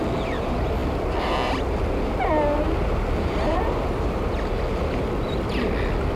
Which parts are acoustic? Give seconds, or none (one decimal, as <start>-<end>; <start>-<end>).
0.0-6.2